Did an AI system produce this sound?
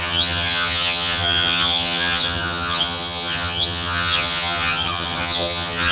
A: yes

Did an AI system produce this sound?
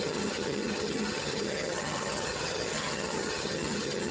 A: yes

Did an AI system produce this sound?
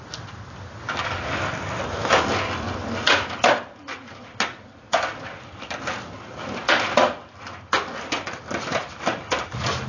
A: no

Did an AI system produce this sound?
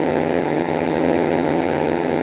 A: yes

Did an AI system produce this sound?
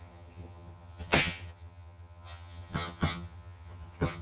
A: yes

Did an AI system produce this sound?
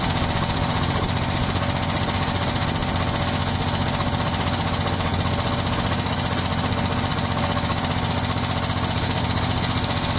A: no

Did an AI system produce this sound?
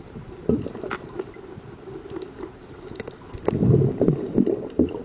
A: no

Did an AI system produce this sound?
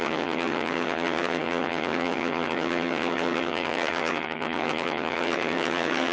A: yes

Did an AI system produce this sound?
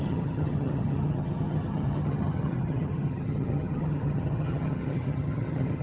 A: yes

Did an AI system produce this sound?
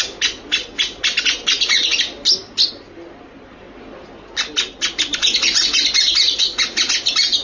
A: no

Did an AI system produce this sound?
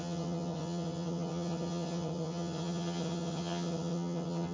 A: yes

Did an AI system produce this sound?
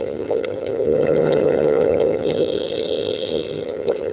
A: yes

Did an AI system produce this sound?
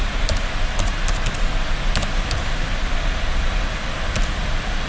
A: no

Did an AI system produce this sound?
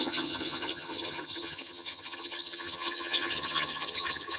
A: yes